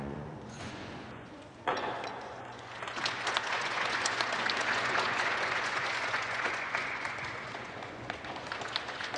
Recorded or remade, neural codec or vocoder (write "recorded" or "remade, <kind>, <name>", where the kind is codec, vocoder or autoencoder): remade, vocoder, Vocos